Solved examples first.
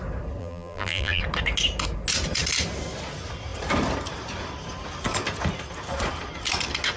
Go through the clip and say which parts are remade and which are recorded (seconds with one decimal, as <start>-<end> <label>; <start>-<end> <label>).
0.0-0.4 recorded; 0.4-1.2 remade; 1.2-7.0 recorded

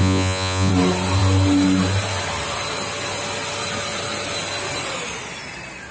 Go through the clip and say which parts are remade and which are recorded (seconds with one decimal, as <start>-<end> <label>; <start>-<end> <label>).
0.0-0.7 remade; 0.7-5.9 recorded

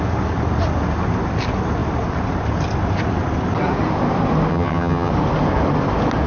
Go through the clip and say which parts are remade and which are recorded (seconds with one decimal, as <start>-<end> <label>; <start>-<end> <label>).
0.0-4.5 recorded; 4.5-5.1 remade; 5.1-6.3 recorded

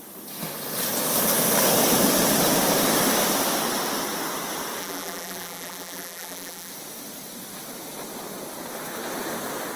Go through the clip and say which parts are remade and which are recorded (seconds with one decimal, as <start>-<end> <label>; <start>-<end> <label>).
0.0-4.8 recorded; 4.8-6.7 remade; 6.7-9.8 recorded

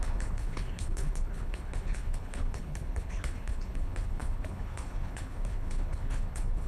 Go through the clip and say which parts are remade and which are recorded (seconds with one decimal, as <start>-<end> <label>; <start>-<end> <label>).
0.0-6.7 remade